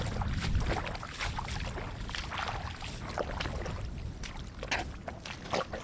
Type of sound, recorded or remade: recorded